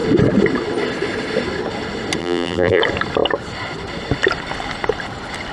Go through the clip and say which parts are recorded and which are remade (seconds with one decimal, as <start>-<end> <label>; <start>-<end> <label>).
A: 0.0-2.2 recorded; 2.2-2.8 remade; 2.8-5.5 recorded